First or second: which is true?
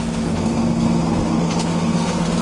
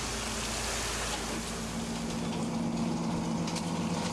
second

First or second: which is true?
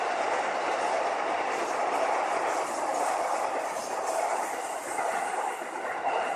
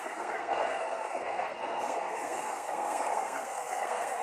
first